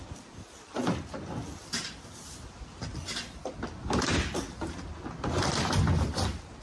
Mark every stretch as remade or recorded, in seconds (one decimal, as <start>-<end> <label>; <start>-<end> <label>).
0.0-6.6 recorded